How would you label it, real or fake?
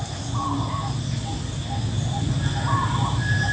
real